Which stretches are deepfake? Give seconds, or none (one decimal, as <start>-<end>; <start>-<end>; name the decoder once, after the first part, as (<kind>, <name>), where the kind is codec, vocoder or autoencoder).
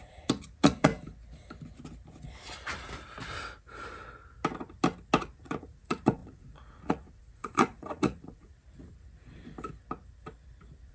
0.0-0.9 (vocoder, Vocos); 5.2-8.5